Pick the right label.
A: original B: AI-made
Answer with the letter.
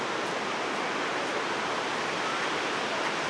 A